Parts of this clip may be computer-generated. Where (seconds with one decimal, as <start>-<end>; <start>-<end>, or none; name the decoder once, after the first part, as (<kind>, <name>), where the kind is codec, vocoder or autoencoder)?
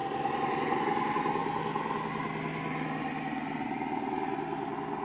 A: 0.0-0.8 (vocoder, BigVGAN v2)